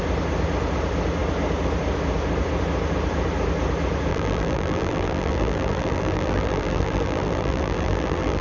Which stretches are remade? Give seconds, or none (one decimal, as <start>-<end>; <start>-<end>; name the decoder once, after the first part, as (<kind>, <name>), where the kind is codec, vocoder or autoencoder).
4.1-8.4 (vocoder, BigVGAN v2)